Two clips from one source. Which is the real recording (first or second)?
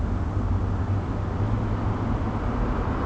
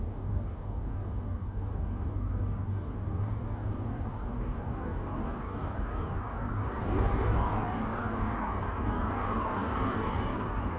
first